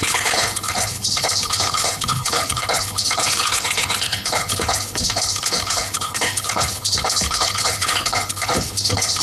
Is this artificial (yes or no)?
yes